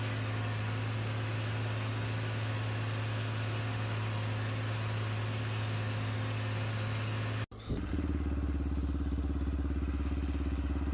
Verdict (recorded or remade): recorded